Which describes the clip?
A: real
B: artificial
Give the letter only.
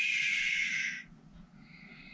B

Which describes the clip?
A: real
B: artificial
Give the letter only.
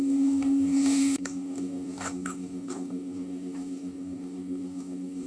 B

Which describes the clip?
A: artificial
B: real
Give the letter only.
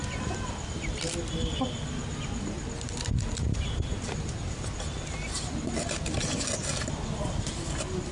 B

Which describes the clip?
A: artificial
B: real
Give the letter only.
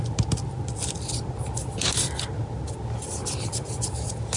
B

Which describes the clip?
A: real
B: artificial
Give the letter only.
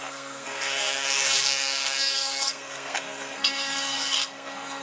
B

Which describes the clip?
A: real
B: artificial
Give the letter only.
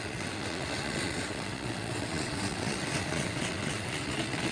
B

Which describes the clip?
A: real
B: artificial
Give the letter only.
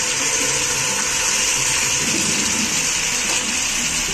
B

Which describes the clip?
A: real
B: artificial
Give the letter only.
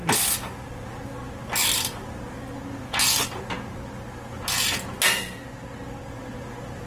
A